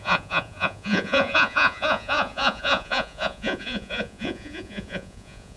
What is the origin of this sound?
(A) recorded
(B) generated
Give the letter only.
B